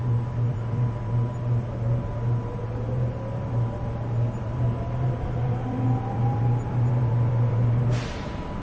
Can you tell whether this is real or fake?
fake